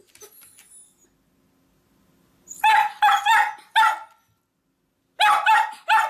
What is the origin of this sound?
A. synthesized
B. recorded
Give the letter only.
B